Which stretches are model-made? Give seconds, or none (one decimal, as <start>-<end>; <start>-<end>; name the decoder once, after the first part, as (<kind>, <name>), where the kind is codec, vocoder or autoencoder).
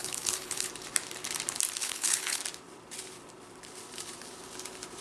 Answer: 0.0-0.7 (codec, HILCodec); 1.8-2.4